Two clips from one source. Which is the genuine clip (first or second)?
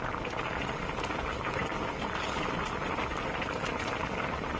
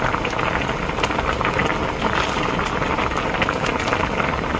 second